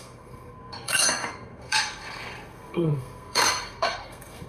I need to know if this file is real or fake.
fake